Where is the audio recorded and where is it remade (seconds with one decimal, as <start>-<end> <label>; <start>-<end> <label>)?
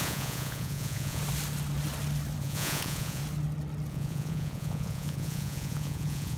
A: 0.0-1.2 remade; 1.2-2.4 recorded; 2.4-3.2 remade; 3.2-3.9 recorded; 3.9-6.4 remade